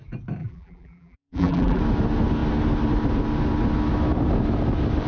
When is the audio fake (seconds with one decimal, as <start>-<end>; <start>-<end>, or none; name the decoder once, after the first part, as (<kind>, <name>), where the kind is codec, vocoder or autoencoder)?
0.4-1.8 (vocoder, BigVGAN v2)